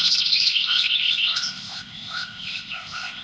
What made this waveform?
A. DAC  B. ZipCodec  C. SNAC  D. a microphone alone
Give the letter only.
B